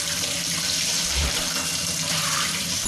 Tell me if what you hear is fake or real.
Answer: fake